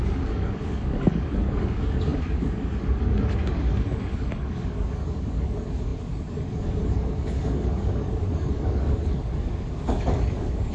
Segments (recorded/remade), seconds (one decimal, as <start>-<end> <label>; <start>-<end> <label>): 0.0-10.7 remade